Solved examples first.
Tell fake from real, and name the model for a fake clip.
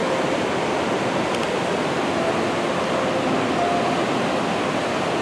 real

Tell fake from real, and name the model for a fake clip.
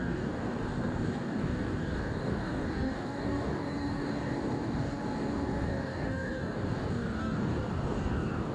fake, codec, DAC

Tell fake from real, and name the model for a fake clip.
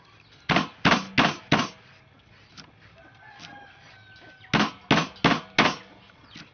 real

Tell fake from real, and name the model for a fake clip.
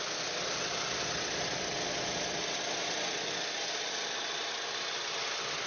real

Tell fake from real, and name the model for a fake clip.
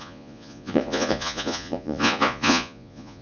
fake, vocoder, Vocos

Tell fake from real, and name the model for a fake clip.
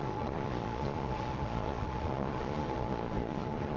fake, vocoder, Vocos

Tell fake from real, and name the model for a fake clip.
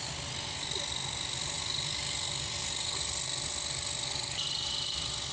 real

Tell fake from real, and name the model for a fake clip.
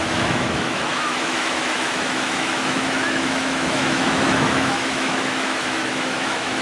fake, autoencoder, DAC-VAE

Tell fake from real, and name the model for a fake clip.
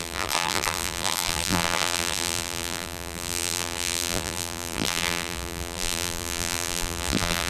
fake, vocoder, BigVGAN v2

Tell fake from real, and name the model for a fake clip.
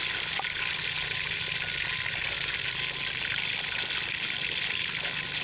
real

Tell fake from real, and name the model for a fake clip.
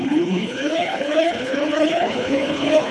fake, codec, HILCodec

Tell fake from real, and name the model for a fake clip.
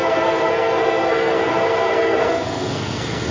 fake, codec, SNAC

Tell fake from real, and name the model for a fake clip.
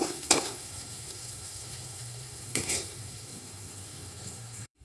fake, codec, SNAC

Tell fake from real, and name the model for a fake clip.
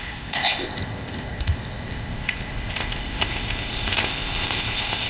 fake, codec, ZipCodec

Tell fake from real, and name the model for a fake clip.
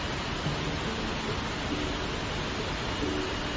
real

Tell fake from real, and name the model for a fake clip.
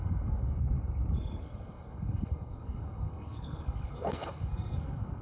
fake, codec, SNAC